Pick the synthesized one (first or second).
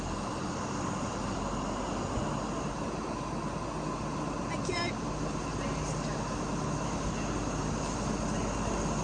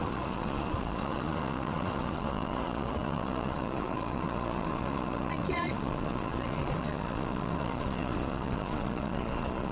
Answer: second